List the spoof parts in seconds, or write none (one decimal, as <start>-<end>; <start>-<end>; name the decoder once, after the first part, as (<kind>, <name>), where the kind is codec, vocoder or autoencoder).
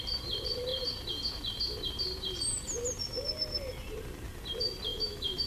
4.9-5.5 (autoencoder, DAC-VAE)